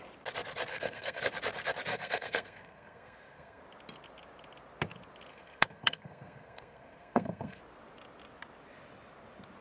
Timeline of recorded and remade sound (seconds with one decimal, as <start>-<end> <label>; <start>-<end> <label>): 0.0-0.7 recorded; 0.7-1.2 remade; 1.2-1.9 recorded; 1.9-3.6 remade; 3.6-5.3 recorded; 5.3-7.6 remade; 7.6-9.6 recorded